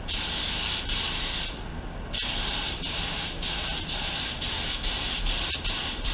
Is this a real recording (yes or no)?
yes